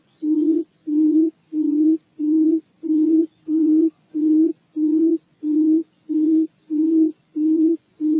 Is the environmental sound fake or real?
fake